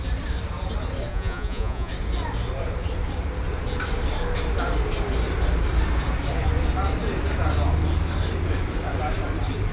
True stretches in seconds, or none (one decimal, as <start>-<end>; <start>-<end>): 0.0-1.1; 1.9-9.7

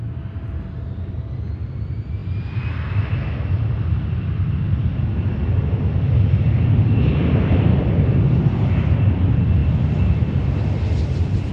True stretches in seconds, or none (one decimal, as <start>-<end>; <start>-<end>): 0.0-11.5